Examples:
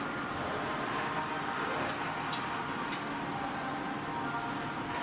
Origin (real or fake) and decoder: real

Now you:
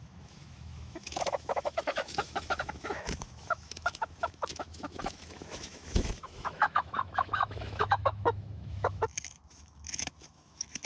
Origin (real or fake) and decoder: fake, autoencoder, DAC-VAE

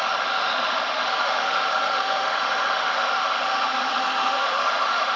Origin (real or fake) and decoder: fake, autoencoder, DAC-VAE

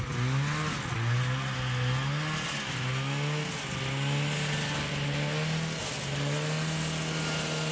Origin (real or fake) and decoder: real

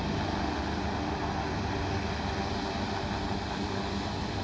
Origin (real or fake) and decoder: real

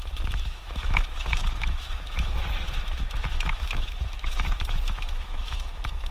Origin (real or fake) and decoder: fake, autoencoder, DAC-VAE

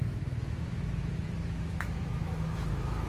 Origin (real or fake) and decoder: fake, autoencoder, DAC-VAE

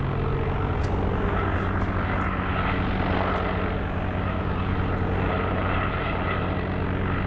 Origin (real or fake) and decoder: real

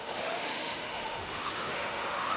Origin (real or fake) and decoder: fake, autoencoder, DAC-VAE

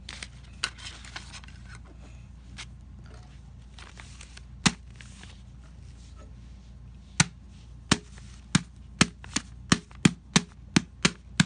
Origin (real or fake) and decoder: real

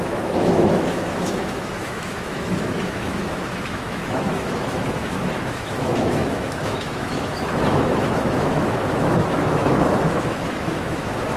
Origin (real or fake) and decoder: fake, autoencoder, DAC-VAE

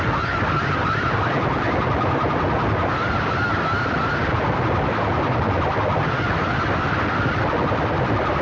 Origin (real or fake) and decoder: real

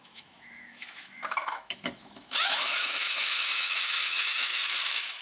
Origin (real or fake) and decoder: fake, autoencoder, DAC-VAE